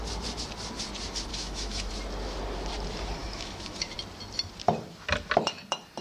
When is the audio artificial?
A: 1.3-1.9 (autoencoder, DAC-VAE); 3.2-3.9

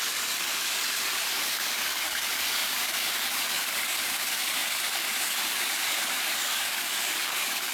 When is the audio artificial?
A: 0.0-7.7 (codec, DAC)

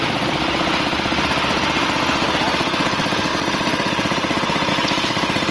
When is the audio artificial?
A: none

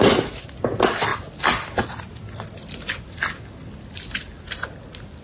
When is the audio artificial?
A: none